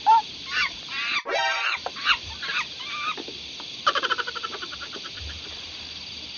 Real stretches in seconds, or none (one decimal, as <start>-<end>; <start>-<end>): none